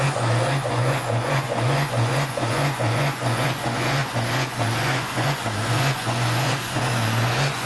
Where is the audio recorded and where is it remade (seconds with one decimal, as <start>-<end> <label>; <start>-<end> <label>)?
0.0-7.7 remade